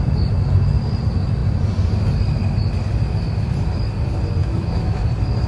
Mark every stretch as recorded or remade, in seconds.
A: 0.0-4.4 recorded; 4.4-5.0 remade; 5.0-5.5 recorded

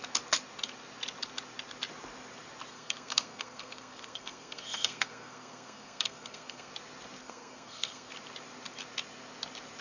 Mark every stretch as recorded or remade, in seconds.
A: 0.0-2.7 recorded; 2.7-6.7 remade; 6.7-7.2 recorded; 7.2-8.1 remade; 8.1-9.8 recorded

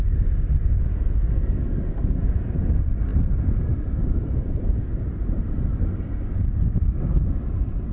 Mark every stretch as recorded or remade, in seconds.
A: 0.0-3.1 recorded; 3.1-6.5 remade; 6.5-7.9 recorded